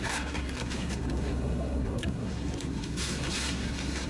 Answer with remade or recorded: remade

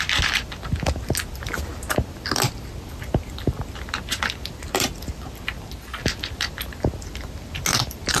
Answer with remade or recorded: recorded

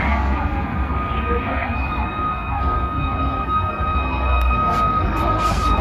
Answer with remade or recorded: remade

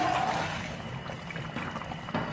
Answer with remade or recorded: recorded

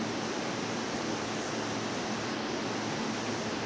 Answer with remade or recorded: recorded